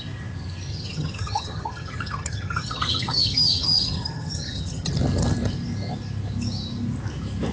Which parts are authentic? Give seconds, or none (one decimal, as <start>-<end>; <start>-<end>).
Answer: 0.0-0.7; 4.9-7.5